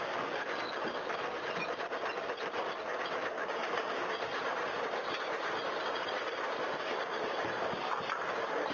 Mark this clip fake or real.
real